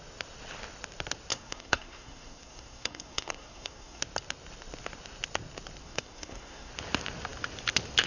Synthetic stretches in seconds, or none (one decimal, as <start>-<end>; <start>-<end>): 1.3-4.0; 5.8-6.7